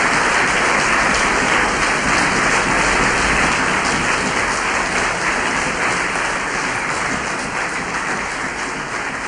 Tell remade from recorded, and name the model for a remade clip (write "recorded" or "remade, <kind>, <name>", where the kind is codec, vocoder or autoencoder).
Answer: recorded